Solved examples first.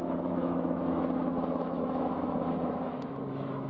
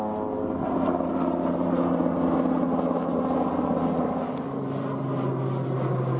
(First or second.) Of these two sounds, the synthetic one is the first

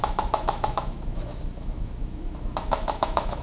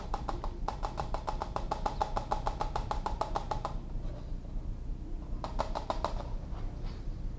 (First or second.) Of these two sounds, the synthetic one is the first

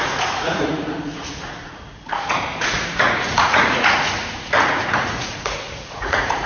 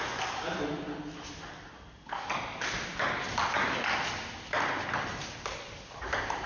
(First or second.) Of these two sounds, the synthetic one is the first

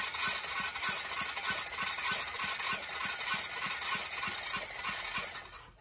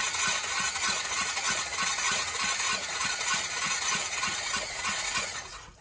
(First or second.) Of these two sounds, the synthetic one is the second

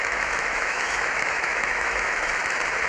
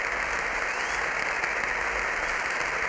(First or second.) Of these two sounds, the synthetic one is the first